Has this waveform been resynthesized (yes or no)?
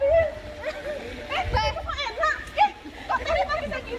no